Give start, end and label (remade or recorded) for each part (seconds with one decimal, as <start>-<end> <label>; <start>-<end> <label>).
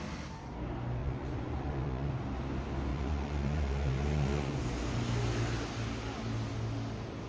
0.0-1.0 recorded; 1.0-2.1 remade; 2.1-2.9 recorded; 2.9-4.6 remade; 4.6-7.3 recorded